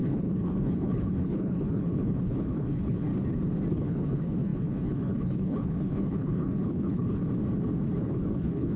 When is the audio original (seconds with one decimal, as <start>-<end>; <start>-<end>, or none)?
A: 3.1-3.7; 7.2-8.0